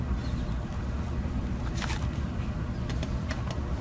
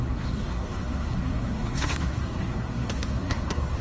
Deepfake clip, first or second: second